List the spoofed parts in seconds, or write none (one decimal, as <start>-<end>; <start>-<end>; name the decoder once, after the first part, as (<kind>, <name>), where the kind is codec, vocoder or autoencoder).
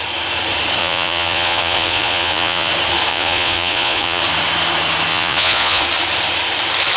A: 0.8-2.7 (vocoder, Vocos); 3.1-4.2; 5.1-5.8